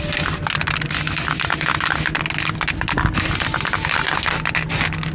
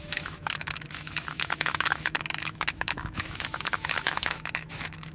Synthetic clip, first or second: second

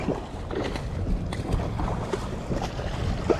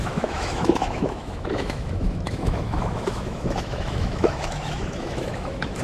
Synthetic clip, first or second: second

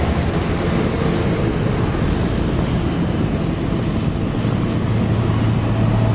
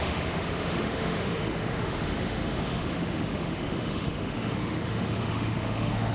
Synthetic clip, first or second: second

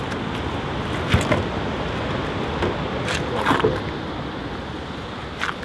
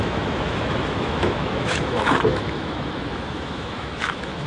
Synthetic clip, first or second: second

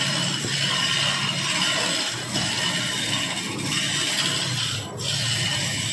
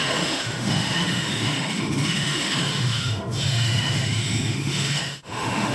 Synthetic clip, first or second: second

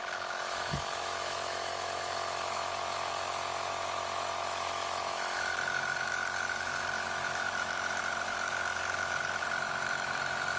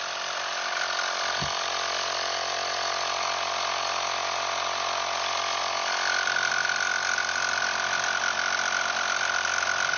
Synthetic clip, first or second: first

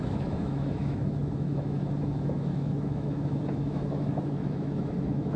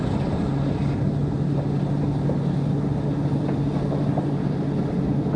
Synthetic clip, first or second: first